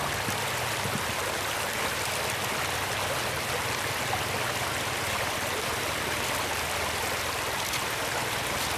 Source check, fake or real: real